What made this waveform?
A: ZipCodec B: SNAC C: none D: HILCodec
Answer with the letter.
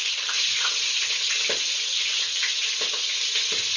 C